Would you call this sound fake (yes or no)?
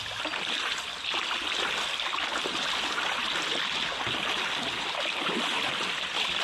no